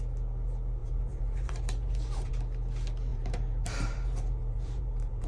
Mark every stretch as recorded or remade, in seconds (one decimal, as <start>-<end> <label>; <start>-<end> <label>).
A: 0.0-0.8 recorded; 0.8-2.3 remade; 2.3-3.1 recorded; 3.1-5.3 remade